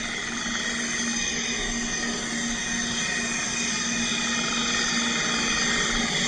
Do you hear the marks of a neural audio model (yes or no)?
no